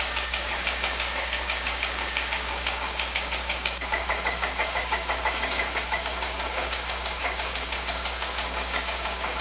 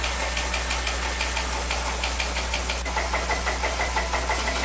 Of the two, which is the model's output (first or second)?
first